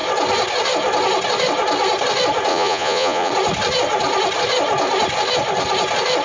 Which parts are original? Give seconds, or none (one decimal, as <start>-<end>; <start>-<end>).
0.0-2.5; 3.3-6.2